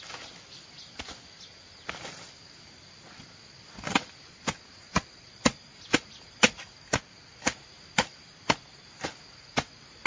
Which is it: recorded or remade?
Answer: recorded